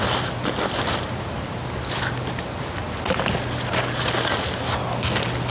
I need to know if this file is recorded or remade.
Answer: recorded